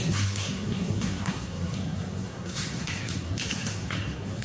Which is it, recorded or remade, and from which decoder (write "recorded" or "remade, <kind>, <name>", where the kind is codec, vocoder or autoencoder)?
remade, codec, SNAC